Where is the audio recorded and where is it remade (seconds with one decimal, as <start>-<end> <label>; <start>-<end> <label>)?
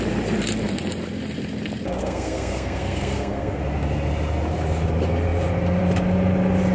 0.0-2.0 recorded; 2.0-3.6 remade; 3.6-6.7 recorded